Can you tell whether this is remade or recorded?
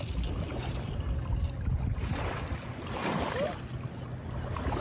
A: recorded